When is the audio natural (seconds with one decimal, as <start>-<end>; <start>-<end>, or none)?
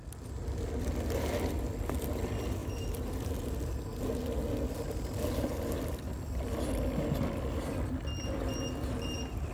0.0-2.6; 3.3-9.5